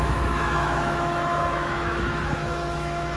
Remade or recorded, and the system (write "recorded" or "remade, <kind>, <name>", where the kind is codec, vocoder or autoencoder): remade, autoencoder, DAC-VAE